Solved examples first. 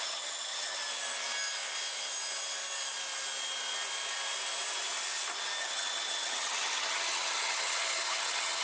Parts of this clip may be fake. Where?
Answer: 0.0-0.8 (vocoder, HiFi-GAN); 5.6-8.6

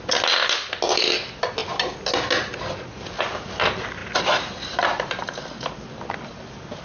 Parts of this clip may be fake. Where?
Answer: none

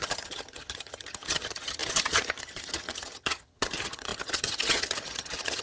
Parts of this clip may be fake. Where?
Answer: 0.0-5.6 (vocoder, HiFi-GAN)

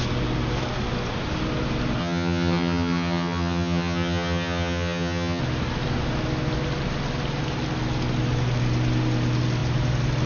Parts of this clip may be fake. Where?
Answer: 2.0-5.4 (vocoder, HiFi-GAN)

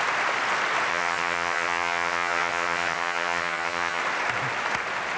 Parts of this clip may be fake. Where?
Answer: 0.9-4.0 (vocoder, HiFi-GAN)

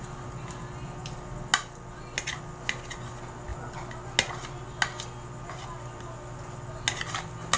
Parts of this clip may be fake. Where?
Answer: none